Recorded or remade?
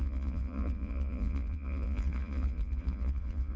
remade